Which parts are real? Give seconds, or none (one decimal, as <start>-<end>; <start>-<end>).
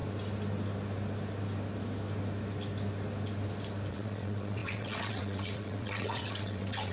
0.0-3.9